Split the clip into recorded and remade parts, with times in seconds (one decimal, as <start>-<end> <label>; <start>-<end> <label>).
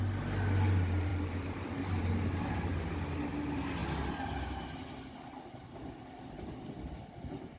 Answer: 0.0-7.6 recorded